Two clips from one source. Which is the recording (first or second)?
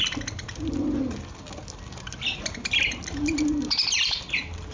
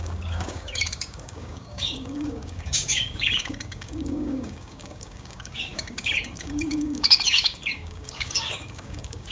first